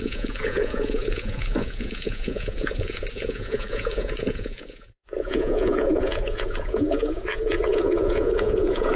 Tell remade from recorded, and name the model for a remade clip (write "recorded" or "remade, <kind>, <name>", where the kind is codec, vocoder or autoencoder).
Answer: remade, vocoder, Vocos